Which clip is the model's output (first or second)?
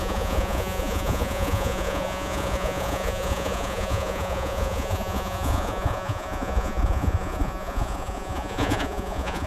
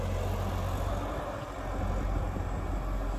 first